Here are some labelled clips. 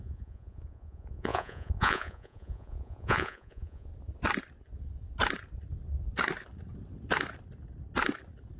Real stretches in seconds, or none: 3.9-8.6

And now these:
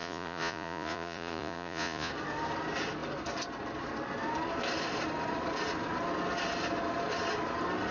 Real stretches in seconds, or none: 2.1-7.9

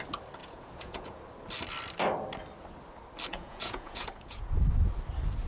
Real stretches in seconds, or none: 0.0-0.4; 1.2-3.3; 4.6-5.5

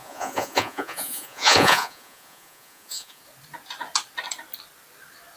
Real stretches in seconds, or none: 3.2-5.4

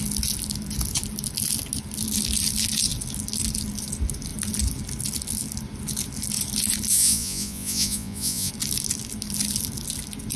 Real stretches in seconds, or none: 0.0-6.9; 8.5-10.4

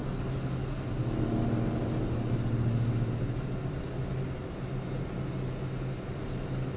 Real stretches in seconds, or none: 0.0-6.8